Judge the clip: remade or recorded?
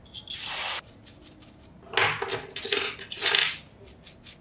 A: recorded